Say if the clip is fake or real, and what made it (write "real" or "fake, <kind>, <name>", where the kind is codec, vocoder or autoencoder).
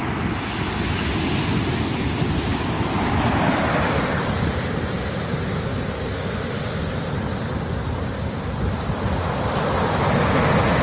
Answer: real